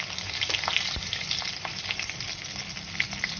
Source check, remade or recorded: recorded